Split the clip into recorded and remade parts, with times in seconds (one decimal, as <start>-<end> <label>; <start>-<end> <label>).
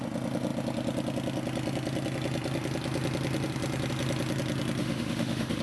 0.0-4.8 recorded; 4.8-5.6 remade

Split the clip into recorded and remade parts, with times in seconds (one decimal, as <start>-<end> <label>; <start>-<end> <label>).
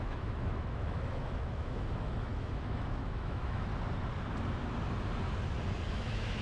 0.0-3.7 remade; 3.7-5.9 recorded; 5.9-6.4 remade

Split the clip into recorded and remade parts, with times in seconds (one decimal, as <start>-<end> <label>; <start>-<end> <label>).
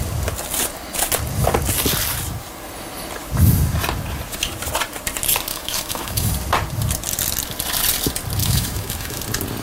0.0-5.5 recorded; 5.5-6.3 remade; 6.3-8.4 recorded; 8.4-9.2 remade; 9.2-9.6 recorded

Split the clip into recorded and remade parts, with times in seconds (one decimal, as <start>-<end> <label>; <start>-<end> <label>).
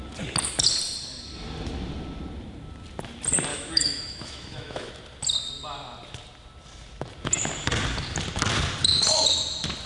0.0-3.5 recorded; 3.5-4.9 remade; 4.9-9.9 recorded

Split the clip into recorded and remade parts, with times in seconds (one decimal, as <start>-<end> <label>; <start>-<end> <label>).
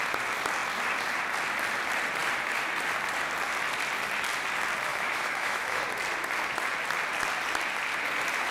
0.0-4.9 recorded; 4.9-5.8 remade; 5.8-8.5 recorded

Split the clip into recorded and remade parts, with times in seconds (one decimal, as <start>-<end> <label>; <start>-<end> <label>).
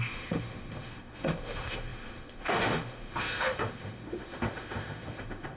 0.0-5.6 remade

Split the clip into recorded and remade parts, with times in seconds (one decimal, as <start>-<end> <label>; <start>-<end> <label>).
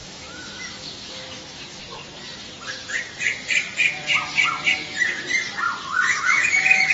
0.0-1.8 remade; 1.8-5.9 recorded; 5.9-6.9 remade